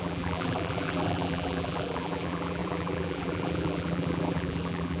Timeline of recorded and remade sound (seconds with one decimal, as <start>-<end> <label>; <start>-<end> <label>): 0.0-5.0 remade